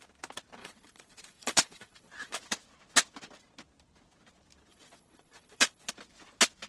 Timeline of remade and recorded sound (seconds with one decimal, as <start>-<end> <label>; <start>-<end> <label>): 0.0-0.6 recorded; 0.6-2.4 remade; 2.4-4.7 recorded; 4.7-5.9 remade; 5.9-6.7 recorded